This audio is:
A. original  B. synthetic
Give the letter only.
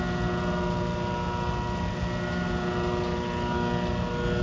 A